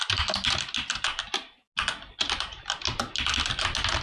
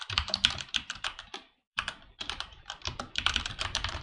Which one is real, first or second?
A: first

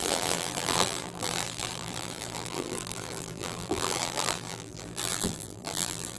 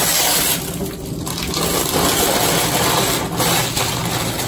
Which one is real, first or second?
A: second